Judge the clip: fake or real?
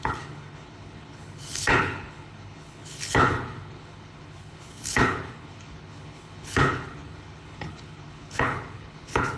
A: fake